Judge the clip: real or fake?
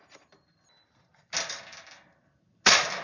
real